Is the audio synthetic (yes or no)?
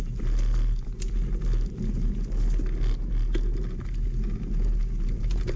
no